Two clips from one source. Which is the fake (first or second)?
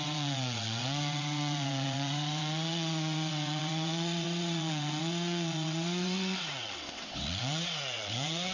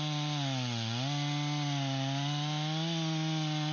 first